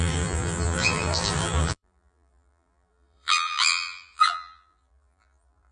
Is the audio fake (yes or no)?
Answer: yes